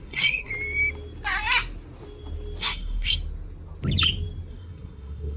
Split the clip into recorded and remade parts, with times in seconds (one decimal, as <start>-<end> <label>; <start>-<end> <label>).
0.0-0.5 remade; 0.5-2.6 recorded; 2.6-3.2 remade; 3.2-4.5 recorded; 4.5-5.4 remade